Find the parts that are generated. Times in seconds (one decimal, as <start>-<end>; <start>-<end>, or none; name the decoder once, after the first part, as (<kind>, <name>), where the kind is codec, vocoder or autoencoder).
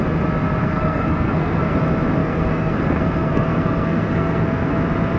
0.6-1.8 (codec, SNAC); 2.2-4.8